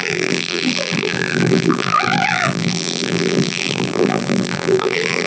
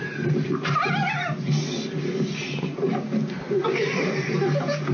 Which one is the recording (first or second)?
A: second